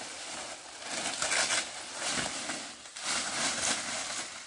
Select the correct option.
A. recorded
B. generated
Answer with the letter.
A